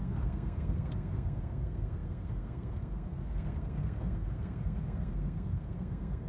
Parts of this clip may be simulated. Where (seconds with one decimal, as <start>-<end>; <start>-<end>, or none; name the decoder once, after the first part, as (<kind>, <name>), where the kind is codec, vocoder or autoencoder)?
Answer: 0.0-6.3 (codec, SNAC)